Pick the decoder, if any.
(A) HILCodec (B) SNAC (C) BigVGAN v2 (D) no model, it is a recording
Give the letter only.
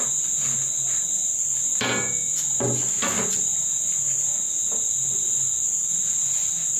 D